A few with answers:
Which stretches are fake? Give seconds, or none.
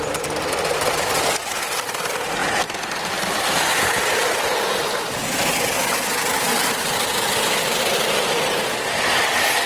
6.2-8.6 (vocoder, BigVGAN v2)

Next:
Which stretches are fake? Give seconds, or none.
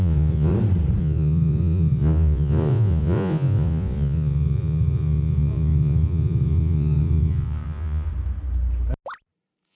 0.0-0.5 (vocoder, Vocos); 1.0-8.1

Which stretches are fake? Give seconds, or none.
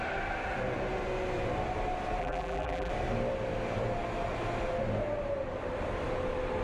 2.2-2.9 (vocoder, BigVGAN v2)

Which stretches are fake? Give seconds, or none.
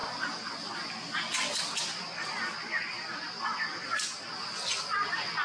none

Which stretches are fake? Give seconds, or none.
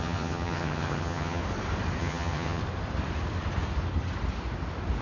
0.0-1.4 (vocoder, HiFi-GAN); 2.0-2.6